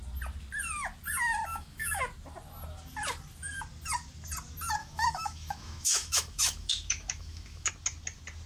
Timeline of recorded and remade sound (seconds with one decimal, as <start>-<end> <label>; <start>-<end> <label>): 0.0-1.5 recorded; 1.5-2.0 remade; 2.0-4.8 recorded; 4.8-7.7 remade; 7.7-8.5 recorded